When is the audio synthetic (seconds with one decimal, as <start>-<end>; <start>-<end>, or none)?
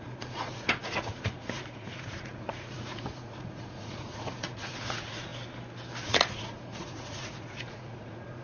0.0-5.3; 6.0-8.4